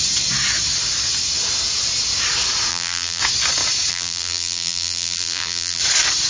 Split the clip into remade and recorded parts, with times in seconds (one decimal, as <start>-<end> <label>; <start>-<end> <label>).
0.0-2.7 recorded; 2.7-3.2 remade; 3.2-3.9 recorded; 3.9-5.8 remade; 5.8-6.3 recorded